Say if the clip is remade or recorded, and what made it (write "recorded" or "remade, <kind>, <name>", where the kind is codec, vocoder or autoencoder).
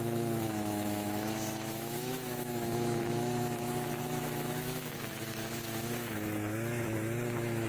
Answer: remade, autoencoder, DAC-VAE